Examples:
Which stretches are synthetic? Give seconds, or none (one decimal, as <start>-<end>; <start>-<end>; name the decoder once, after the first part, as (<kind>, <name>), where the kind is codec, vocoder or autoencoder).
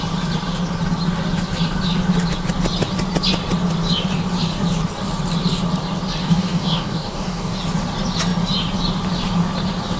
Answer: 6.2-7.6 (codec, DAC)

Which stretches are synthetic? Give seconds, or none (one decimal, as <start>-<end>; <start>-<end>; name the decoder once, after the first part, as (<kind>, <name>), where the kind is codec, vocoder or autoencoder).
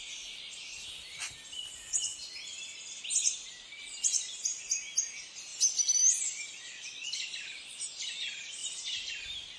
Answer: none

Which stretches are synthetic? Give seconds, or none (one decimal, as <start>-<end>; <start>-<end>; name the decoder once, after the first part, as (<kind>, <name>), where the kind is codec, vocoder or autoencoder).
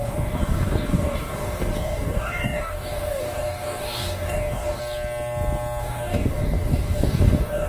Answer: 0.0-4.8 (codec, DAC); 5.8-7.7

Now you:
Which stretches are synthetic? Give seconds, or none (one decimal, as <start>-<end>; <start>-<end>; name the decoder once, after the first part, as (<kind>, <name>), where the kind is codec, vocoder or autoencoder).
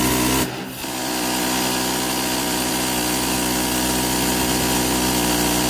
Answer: none